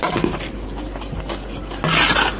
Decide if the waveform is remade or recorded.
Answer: recorded